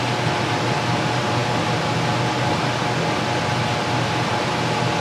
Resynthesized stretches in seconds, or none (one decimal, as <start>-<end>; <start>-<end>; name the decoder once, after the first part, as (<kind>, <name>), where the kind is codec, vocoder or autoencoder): none

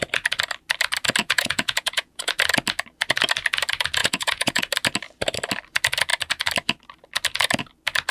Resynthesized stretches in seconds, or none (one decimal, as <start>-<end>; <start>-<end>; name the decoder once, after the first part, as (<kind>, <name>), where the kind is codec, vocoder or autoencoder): 1.2-2.3 (vocoder, Vocos); 4.0-4.6